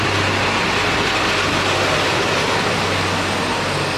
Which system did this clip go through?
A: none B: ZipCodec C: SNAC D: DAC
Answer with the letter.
A